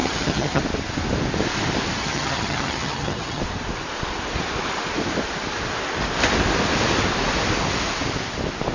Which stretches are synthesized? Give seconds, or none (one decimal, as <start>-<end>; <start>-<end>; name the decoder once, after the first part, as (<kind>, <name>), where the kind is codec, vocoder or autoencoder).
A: 0.0-0.6 (vocoder, HiFi-GAN); 2.0-3.4